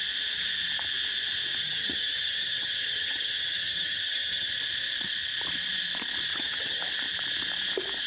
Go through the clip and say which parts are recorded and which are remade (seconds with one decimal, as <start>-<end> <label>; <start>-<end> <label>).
0.0-1.6 recorded; 1.6-4.5 remade; 4.5-6.3 recorded; 6.3-6.8 remade; 6.8-8.1 recorded